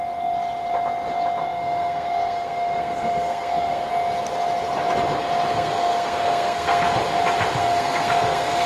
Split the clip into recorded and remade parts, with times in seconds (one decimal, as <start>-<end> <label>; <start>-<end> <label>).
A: 0.0-1.4 recorded; 1.4-3.9 remade; 3.9-5.5 recorded; 5.5-7.0 remade; 7.0-7.6 recorded; 7.6-8.7 remade